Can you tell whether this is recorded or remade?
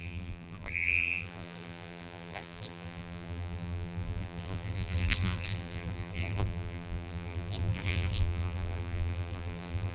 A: remade